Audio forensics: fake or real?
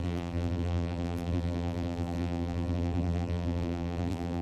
fake